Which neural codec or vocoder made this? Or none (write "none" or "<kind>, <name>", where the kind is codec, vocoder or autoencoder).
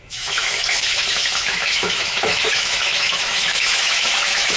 autoencoder, DAC-VAE